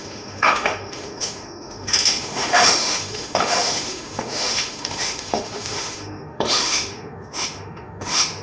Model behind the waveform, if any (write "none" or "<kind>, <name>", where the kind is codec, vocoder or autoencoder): autoencoder, DAC-VAE